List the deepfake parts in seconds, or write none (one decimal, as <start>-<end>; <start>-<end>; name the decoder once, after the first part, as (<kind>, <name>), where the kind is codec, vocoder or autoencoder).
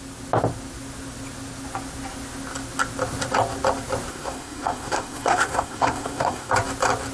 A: 4.1-6.5 (codec, SNAC)